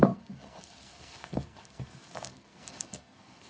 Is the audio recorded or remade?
remade